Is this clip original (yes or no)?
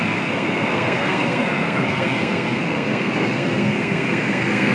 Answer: no